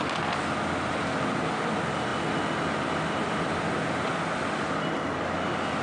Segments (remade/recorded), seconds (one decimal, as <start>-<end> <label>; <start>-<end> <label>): 0.0-5.8 recorded